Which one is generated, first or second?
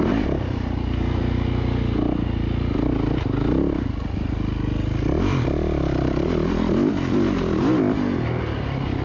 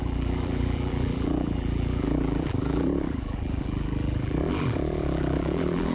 second